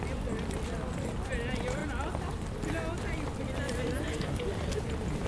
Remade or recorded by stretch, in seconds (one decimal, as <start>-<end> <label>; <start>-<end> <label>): 0.0-5.3 recorded